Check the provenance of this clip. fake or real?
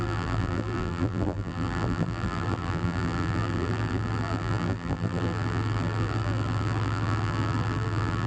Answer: fake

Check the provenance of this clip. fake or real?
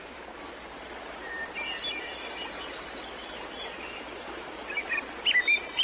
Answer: fake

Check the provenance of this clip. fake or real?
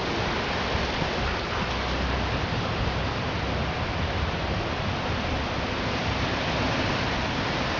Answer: real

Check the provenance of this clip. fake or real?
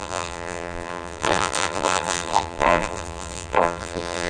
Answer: fake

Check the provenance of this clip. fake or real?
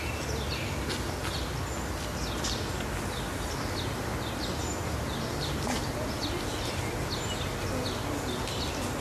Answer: real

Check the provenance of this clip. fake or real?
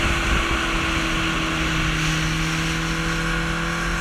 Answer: real